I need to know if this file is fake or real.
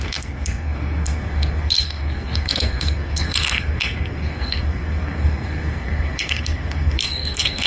fake